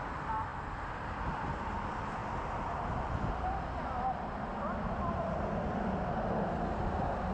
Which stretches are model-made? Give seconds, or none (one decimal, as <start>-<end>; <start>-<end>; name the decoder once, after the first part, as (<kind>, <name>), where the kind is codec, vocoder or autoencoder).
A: none